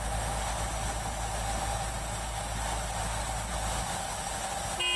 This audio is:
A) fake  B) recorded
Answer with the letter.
B